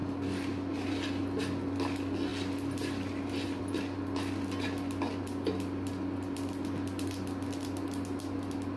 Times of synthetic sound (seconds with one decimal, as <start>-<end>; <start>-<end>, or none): none

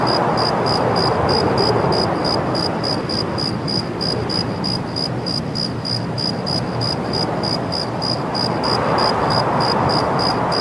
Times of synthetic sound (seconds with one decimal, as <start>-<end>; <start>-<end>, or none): none

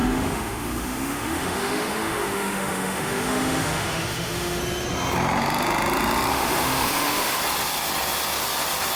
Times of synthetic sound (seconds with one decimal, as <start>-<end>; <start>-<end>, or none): 0.0-4.6; 6.3-7.4

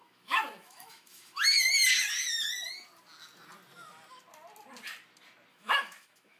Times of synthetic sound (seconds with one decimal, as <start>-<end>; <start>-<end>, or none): 0.0-1.6; 5.5-6.4

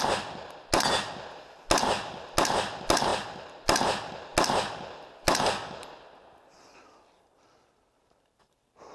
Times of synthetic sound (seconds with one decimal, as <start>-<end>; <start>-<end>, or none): none